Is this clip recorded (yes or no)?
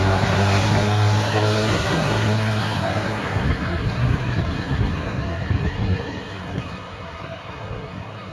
no